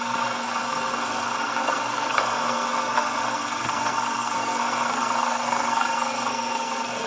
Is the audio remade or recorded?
remade